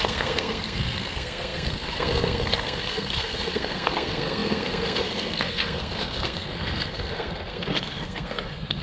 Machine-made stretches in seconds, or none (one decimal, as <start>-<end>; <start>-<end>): 0.0-8.8